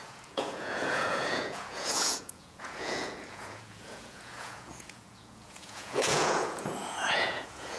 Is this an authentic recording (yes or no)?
no